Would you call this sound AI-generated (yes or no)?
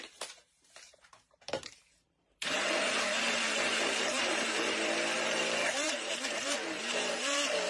yes